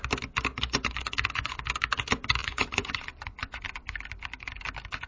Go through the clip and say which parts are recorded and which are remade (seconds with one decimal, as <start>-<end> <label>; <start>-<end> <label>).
0.0-0.5 recorded; 0.5-1.6 remade; 1.6-2.4 recorded; 2.4-3.6 remade; 3.6-5.1 recorded

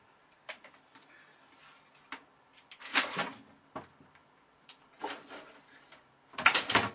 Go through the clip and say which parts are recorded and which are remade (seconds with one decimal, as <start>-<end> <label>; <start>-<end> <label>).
0.0-6.9 recorded

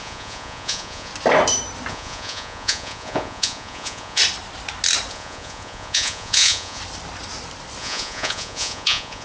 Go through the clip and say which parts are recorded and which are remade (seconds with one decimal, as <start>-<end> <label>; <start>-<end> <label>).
0.0-1.1 remade; 1.1-1.9 recorded; 1.9-4.2 remade; 4.2-5.1 recorded; 5.1-6.8 remade; 6.8-7.8 recorded; 7.8-9.2 remade

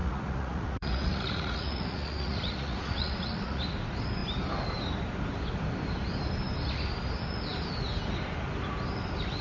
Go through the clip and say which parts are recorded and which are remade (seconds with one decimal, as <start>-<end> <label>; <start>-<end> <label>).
0.0-3.6 remade; 3.6-9.4 recorded

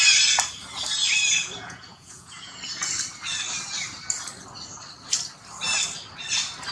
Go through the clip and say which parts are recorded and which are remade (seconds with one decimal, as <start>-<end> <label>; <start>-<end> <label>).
0.0-1.4 recorded; 1.4-2.6 remade; 2.6-6.7 recorded